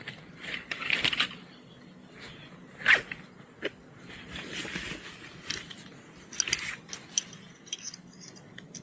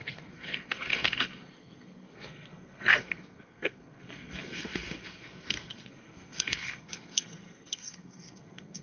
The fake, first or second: second